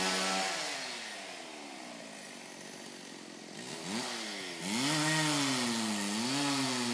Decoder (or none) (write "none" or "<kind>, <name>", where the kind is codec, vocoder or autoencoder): none